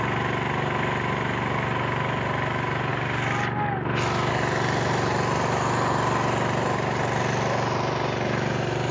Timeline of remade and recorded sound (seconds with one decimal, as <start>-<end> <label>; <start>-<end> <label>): 0.0-8.9 recorded